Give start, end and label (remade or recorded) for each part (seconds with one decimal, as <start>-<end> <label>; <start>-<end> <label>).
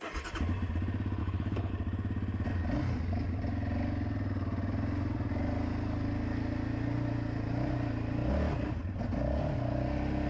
0.0-1.2 recorded; 1.2-1.7 remade; 1.7-10.3 recorded